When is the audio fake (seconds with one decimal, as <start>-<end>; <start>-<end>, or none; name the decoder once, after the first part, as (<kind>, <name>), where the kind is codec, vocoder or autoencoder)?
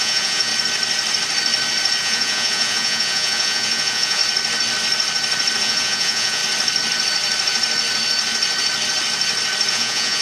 0.0-0.5 (vocoder, Vocos); 2.0-4.2; 5.6-6.4; 9.7-10.2